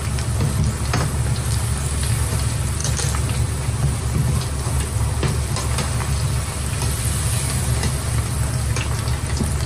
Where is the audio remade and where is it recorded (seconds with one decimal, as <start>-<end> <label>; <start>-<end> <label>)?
0.0-9.7 recorded